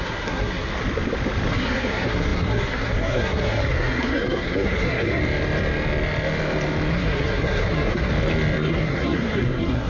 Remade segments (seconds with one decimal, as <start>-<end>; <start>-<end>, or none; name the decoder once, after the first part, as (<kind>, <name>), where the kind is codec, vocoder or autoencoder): 0.0-0.7 (codec, SNAC); 1.5-5.2; 6.9-8.1; 8.7-9.9